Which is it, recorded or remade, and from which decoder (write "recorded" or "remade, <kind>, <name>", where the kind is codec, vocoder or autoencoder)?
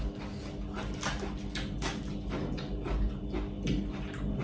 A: recorded